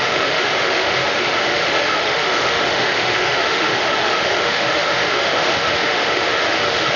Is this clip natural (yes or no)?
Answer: no